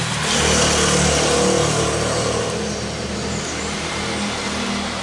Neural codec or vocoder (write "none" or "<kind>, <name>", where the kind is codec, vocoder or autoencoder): none